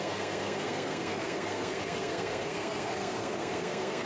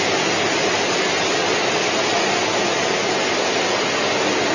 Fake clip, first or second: first